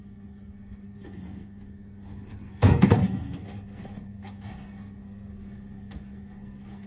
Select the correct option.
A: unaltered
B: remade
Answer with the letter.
B